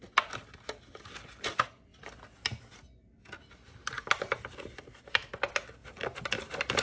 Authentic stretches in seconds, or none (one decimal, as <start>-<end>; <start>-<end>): 0.0-6.8